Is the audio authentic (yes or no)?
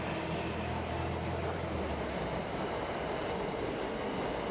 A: yes